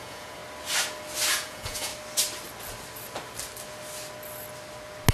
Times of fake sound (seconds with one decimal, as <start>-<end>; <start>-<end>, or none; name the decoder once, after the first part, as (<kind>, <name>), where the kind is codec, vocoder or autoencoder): 0.0-0.4 (vocoder, Vocos); 1.3-1.9